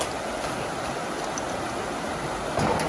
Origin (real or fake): real